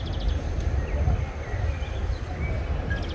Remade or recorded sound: recorded